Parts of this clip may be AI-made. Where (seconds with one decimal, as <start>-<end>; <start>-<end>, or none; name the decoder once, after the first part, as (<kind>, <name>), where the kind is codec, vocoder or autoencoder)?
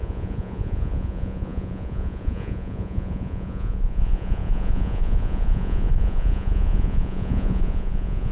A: 0.0-8.3 (vocoder, Vocos)